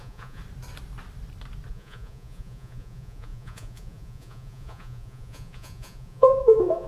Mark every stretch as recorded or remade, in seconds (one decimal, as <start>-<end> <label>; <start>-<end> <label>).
0.0-0.4 remade; 0.4-1.7 recorded; 1.7-6.9 remade